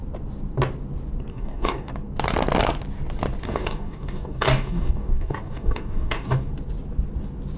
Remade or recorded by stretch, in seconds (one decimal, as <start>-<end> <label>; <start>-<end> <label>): 0.0-1.3 recorded; 1.3-1.9 remade; 1.9-3.4 recorded; 3.4-6.5 remade; 6.5-7.6 recorded

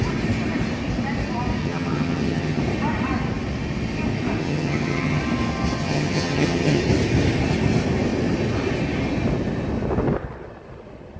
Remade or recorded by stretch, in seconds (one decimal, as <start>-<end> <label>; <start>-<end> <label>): 0.0-1.6 recorded; 1.6-2.6 remade; 2.6-4.4 recorded; 4.4-5.2 remade; 5.2-5.8 recorded; 5.8-6.8 remade; 6.8-11.2 recorded